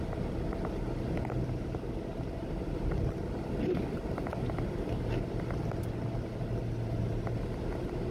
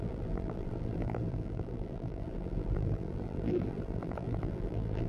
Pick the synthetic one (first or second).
second